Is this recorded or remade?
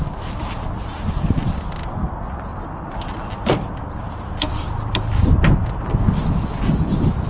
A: recorded